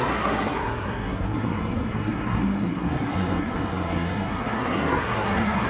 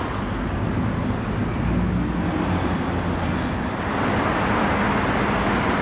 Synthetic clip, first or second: first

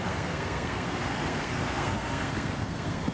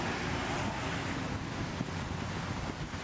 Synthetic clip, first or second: first